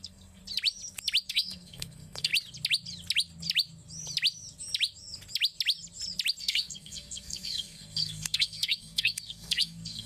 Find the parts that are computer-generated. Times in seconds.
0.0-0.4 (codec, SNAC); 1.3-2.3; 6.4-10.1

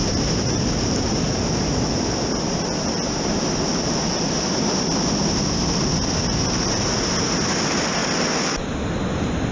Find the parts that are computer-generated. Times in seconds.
none

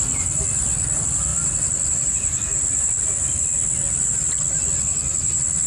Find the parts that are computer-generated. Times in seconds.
none

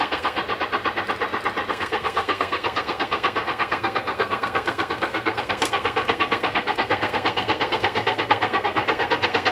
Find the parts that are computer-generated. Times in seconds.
0.0-0.4 (codec, SNAC); 1.7-9.5

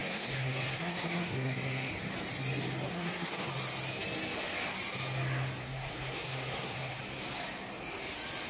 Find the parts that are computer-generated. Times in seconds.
0.0-1.9 (codec, SNAC); 2.9-3.5; 5.6-7.0

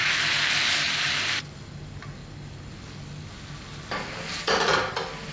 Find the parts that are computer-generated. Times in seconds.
none

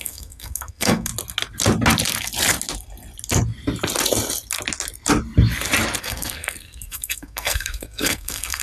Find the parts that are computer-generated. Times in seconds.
0.0-1.1 (codec, SNAC); 6.0-8.6